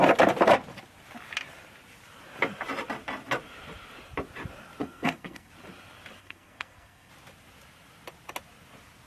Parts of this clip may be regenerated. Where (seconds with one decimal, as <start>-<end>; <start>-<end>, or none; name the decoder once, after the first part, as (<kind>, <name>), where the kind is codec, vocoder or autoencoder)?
4.8-5.5 (codec, SNAC); 6.2-7.1